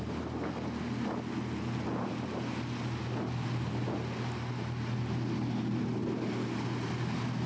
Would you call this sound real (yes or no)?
yes